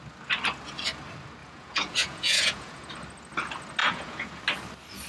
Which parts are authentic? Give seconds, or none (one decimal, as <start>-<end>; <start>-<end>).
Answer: 0.0-1.4; 2.9-3.8; 4.4-5.1